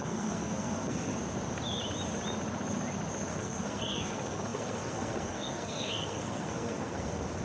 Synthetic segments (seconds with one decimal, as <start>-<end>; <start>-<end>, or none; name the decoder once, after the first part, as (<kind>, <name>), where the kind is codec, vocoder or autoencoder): 0.0-1.1 (codec, SNAC); 3.3-7.4